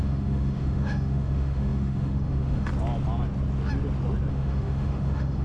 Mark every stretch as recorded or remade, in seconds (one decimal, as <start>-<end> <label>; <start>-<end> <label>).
0.0-2.7 remade; 2.7-4.3 recorded; 4.3-5.4 remade